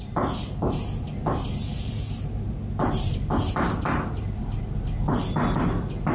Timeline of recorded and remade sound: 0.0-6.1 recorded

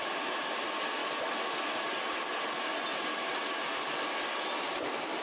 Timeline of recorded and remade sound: 0.0-5.2 recorded

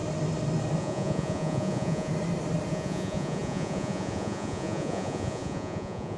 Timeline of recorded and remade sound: 0.0-0.8 recorded; 0.8-2.1 remade; 2.1-2.7 recorded; 2.7-6.2 remade

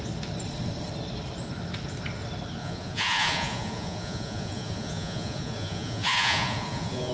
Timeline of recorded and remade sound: 0.0-2.6 recorded; 2.6-7.1 remade

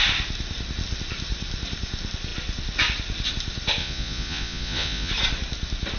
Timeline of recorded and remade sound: 0.0-3.8 recorded; 3.8-5.1 remade; 5.1-6.0 recorded